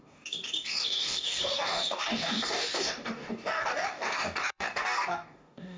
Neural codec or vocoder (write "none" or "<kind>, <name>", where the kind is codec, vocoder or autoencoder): codec, DAC